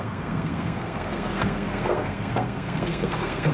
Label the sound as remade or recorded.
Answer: remade